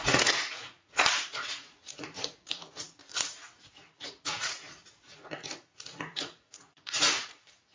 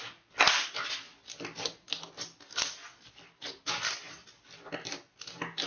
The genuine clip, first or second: second